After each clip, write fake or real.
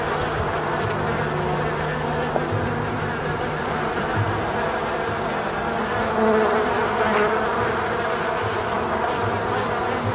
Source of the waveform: real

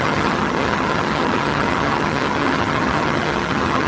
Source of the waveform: fake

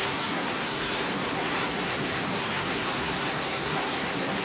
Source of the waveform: fake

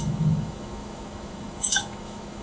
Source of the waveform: fake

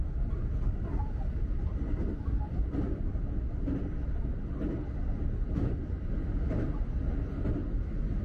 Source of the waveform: real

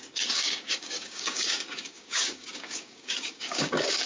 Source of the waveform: fake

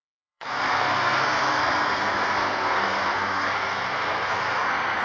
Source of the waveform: fake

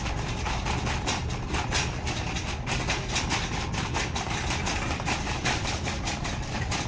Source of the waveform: real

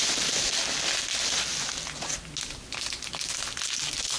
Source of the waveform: real